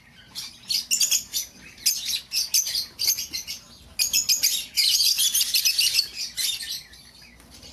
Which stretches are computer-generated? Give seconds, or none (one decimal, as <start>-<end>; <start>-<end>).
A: none

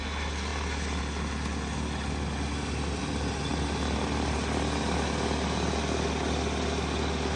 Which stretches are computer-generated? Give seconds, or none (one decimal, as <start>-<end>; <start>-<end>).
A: none

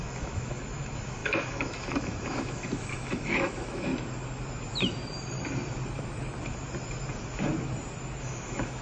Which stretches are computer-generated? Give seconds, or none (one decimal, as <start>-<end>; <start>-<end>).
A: 0.0-3.9; 8.2-8.8

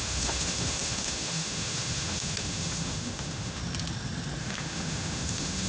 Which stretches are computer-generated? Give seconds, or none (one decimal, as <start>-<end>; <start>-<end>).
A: 0.0-3.6; 4.4-5.7

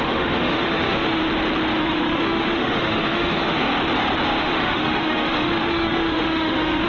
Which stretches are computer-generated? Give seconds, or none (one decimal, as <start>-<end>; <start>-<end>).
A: 0.0-1.2; 1.8-3.7; 4.4-6.9

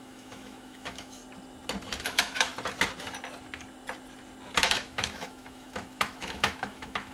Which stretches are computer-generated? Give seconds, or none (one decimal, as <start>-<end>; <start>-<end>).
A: 0.0-1.2; 2.0-2.5; 4.6-7.1